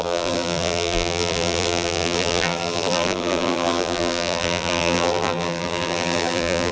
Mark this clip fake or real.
fake